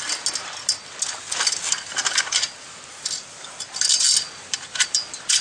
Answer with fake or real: real